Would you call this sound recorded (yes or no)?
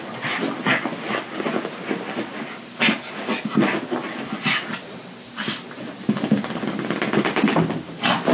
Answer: yes